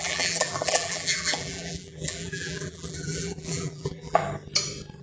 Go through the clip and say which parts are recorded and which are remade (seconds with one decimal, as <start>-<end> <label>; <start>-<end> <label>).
0.0-4.2 remade; 4.2-5.0 recorded